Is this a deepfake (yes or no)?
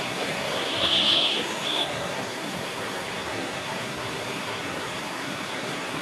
yes